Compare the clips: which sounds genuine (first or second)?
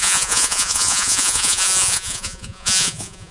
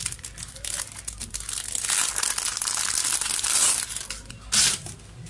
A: second